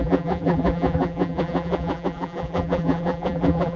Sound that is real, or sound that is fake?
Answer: fake